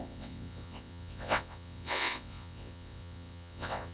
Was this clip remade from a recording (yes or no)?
yes